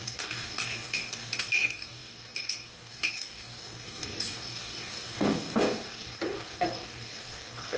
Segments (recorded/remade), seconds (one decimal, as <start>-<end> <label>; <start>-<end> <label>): 0.0-7.8 remade

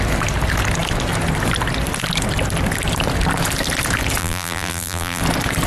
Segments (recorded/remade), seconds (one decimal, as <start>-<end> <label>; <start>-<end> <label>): 0.0-4.2 recorded; 4.2-5.2 remade; 5.2-5.7 recorded

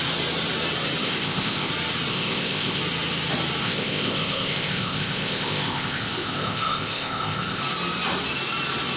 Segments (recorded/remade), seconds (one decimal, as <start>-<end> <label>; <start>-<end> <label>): 0.0-1.0 recorded; 1.0-1.7 remade; 1.7-2.1 recorded; 2.1-2.8 remade; 2.8-3.6 recorded; 3.6-7.6 remade; 7.6-9.0 recorded

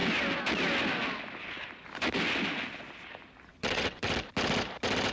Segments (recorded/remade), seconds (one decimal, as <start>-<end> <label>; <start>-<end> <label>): 0.0-3.5 recorded; 3.5-4.1 remade; 4.1-5.1 recorded